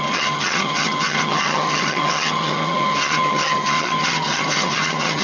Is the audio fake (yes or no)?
yes